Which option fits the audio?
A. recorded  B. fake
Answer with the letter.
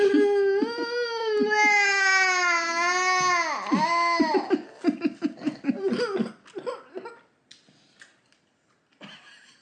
A